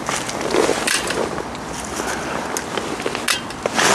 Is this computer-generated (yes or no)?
no